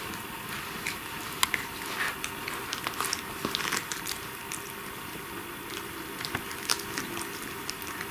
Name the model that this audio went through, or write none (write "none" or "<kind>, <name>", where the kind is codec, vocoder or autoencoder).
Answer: none